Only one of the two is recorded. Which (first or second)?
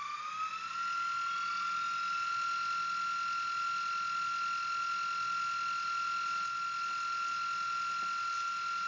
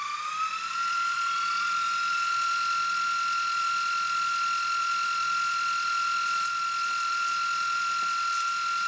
first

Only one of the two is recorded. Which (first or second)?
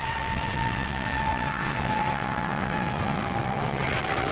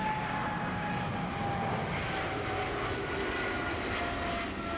second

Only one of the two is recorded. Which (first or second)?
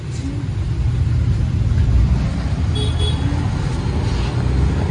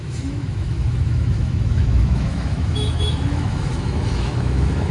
first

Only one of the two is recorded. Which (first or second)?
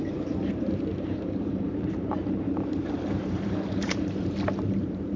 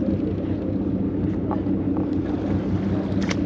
second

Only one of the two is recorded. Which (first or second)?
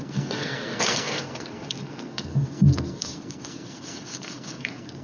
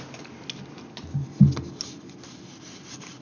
second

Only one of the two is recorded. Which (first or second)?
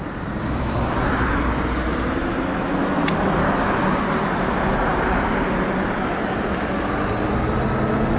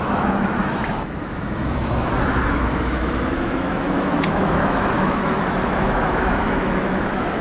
first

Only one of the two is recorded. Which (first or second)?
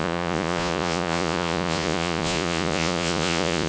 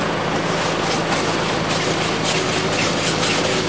second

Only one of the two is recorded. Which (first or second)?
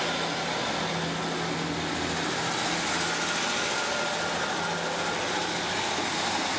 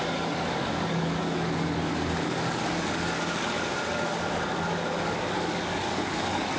first